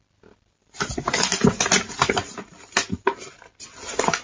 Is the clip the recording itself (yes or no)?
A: yes